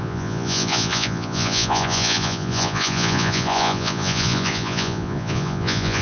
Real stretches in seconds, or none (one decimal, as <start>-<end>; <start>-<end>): none